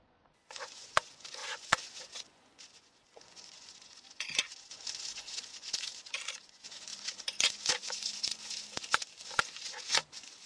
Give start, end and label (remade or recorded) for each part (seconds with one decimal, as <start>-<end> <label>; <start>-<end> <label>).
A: 0.0-10.5 remade